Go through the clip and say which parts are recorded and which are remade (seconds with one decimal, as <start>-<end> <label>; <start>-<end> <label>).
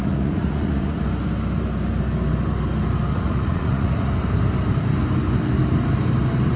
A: 0.0-1.0 remade; 1.0-3.1 recorded; 3.1-4.1 remade; 4.1-6.6 recorded